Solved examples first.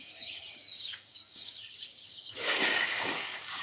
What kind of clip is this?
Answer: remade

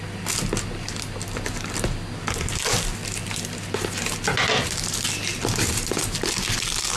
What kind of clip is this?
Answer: recorded